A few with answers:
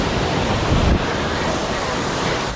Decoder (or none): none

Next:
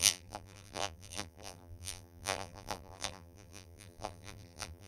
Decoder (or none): vocoder, BigVGAN v2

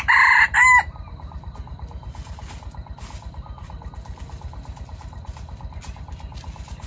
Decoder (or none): none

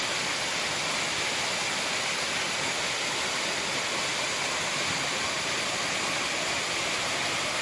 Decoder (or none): none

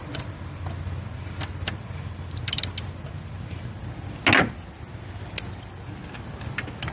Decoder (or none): none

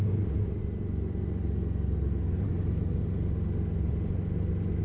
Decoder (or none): none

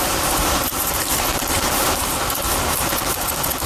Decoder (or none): vocoder, BigVGAN v2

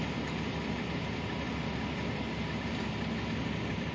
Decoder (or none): none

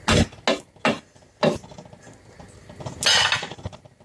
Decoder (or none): none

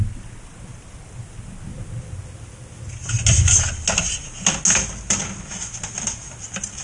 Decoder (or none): none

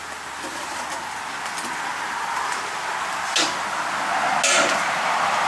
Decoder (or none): none